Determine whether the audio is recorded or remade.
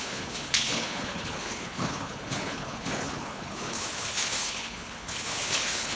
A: remade